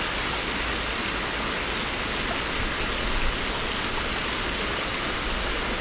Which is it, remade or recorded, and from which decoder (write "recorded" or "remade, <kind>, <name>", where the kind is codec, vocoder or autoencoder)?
recorded